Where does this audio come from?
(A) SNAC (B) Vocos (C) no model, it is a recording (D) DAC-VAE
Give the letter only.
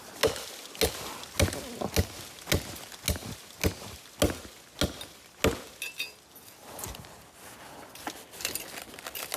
C